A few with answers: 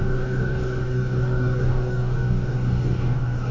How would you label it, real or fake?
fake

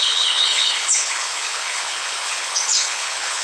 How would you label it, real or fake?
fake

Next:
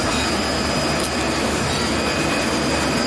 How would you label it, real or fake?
fake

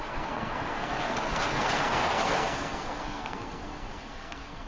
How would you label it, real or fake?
fake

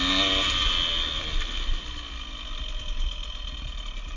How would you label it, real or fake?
real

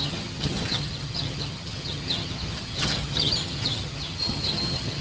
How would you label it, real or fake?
fake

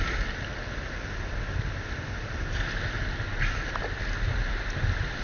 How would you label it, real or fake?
real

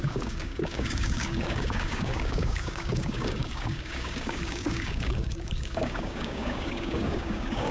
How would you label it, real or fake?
fake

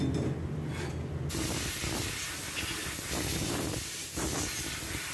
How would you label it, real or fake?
real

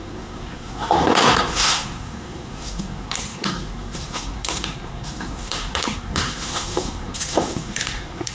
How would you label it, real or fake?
fake